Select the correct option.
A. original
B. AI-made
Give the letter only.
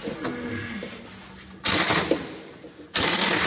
A